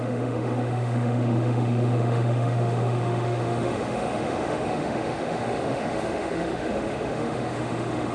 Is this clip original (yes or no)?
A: no